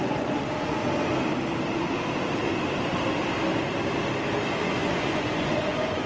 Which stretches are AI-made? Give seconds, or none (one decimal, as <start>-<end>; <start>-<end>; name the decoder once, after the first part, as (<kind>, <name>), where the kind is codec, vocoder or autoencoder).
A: 0.0-0.8 (vocoder, Vocos); 4.5-6.1